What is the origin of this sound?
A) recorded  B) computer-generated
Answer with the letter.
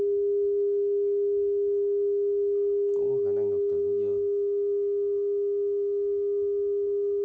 A